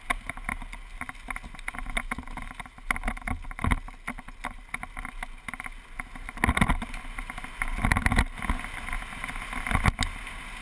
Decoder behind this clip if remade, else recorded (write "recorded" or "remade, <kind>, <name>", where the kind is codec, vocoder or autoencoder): recorded